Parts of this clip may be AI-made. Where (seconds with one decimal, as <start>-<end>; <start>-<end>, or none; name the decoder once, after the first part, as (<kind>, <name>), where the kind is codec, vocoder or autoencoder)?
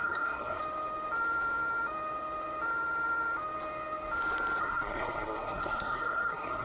0.0-0.6 (codec, SNAC); 4.6-6.6